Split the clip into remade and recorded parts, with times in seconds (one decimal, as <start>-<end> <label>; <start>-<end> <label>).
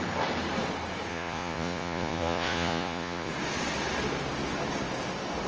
0.0-1.1 recorded; 1.1-3.3 remade; 3.3-5.5 recorded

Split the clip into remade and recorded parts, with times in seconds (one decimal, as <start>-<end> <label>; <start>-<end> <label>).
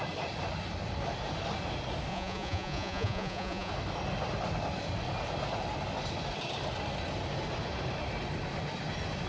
0.0-2.1 recorded; 2.1-3.7 remade; 3.7-9.3 recorded